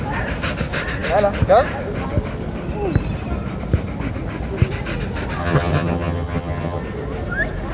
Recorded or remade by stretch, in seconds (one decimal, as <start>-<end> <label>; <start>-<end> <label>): 0.0-5.4 recorded; 5.4-6.8 remade; 6.8-7.7 recorded